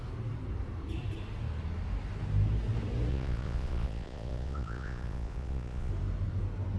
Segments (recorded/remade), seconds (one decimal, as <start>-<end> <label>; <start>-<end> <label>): 0.0-3.1 recorded; 3.1-5.9 remade; 5.9-6.8 recorded

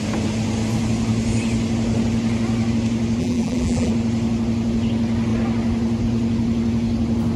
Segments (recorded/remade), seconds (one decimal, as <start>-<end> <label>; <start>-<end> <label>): 0.0-3.2 recorded; 3.2-3.9 remade; 3.9-7.4 recorded

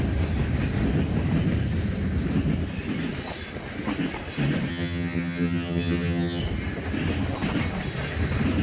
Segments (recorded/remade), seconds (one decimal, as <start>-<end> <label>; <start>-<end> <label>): 0.0-4.7 recorded; 4.7-6.4 remade; 6.4-8.6 recorded

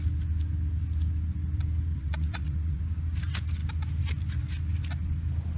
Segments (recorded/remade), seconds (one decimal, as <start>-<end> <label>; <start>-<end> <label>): 0.0-1.9 recorded; 1.9-2.8 remade; 2.8-5.6 recorded